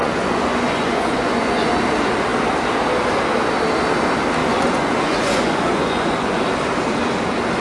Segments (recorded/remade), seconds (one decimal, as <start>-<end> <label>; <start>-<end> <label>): 0.0-1.7 remade; 1.7-4.4 recorded; 4.4-6.4 remade; 6.4-7.6 recorded